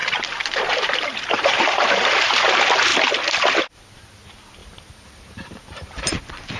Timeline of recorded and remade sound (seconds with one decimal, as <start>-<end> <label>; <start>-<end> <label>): 0.0-0.6 remade; 0.6-1.1 recorded; 1.1-2.1 remade; 2.1-4.6 recorded; 4.6-6.1 remade; 6.1-6.6 recorded

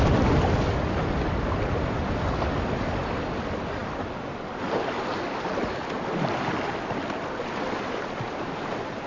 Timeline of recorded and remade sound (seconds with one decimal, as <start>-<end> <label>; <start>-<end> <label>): 0.0-9.1 recorded

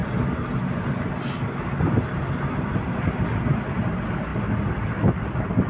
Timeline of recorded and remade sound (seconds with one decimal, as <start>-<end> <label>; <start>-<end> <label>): 0.0-5.7 recorded

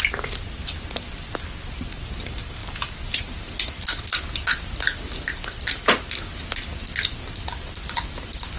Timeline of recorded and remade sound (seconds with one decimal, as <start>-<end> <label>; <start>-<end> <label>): 0.0-2.6 remade; 2.6-7.5 recorded; 7.5-8.6 remade

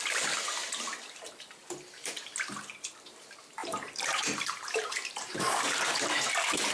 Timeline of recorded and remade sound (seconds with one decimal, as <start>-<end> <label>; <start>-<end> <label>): 0.0-3.6 recorded; 3.6-6.3 remade; 6.3-6.7 recorded